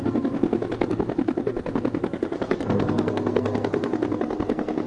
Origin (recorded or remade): remade